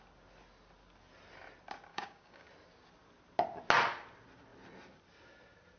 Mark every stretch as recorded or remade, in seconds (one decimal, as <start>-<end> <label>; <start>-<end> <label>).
0.0-1.9 recorded; 1.9-2.5 remade; 2.5-5.8 recorded